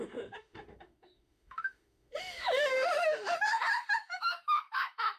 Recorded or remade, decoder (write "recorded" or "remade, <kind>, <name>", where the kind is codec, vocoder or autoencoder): remade, autoencoder, DAC-VAE